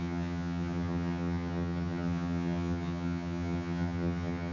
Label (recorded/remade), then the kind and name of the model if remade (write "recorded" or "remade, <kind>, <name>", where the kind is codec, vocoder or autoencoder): remade, vocoder, HiFi-GAN